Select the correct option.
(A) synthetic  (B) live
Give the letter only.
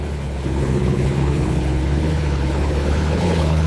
A